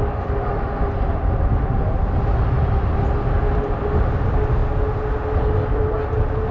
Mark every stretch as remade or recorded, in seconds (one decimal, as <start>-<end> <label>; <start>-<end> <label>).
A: 0.0-6.5 recorded